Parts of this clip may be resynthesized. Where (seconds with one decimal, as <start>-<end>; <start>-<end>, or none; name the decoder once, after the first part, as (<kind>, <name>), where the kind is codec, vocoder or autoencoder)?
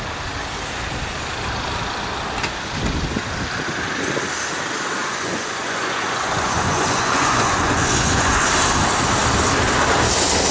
5.0-8.5 (vocoder, Vocos)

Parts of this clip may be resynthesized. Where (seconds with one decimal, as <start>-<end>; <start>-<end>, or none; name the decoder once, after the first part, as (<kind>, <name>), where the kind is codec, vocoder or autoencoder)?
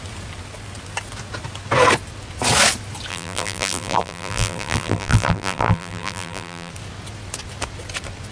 3.1-6.7 (vocoder, BigVGAN v2)